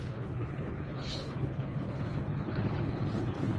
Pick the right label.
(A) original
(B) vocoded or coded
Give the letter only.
B